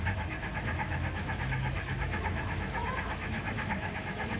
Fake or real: fake